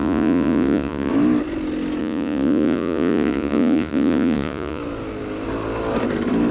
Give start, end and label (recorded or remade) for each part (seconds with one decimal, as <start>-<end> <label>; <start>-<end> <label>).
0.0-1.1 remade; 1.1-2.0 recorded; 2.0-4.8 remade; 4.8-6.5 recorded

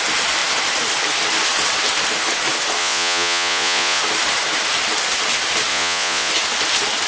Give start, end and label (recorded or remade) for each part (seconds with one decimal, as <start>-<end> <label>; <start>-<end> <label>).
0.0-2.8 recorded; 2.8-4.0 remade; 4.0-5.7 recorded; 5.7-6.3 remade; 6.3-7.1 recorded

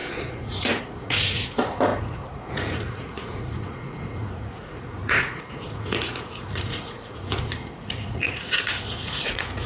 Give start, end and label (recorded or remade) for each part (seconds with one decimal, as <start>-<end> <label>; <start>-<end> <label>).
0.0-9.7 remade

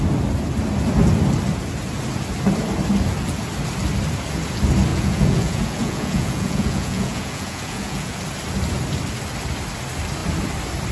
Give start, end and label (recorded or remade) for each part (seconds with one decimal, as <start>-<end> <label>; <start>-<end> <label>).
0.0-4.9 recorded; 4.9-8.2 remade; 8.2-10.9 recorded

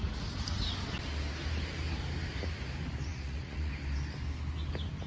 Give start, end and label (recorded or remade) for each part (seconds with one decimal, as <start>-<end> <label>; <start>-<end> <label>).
0.0-3.1 recorded; 3.1-3.7 remade; 3.7-5.1 recorded